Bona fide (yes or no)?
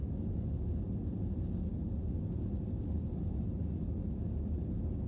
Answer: yes